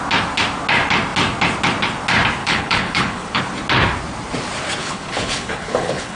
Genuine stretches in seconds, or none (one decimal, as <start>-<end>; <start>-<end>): 0.0-2.4; 3.4-4.8